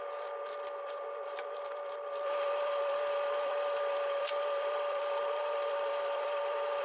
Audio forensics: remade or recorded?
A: remade